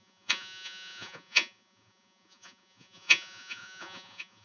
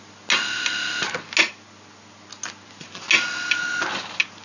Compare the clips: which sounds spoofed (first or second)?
first